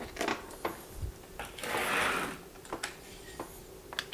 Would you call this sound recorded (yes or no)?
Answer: yes